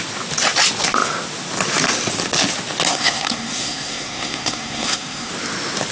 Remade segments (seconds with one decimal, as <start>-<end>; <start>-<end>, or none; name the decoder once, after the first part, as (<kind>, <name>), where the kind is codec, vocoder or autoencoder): 2.9-5.3 (codec, SNAC)